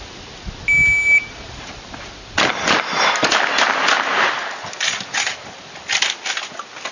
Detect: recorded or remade recorded